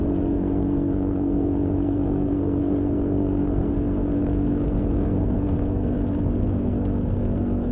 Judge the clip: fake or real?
fake